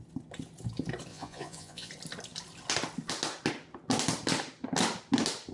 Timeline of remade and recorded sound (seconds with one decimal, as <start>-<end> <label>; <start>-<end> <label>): 0.0-1.1 recorded; 1.1-1.9 remade; 1.9-5.5 recorded